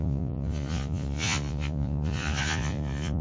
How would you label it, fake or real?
fake